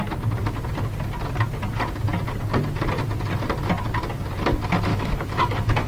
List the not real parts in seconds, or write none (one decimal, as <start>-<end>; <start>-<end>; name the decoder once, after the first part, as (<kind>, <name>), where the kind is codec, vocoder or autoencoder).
4.9-5.9 (autoencoder, DAC-VAE)